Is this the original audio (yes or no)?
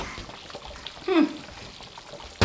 yes